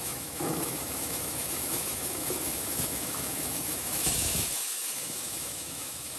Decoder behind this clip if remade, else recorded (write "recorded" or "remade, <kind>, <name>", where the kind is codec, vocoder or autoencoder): remade, autoencoder, DAC-VAE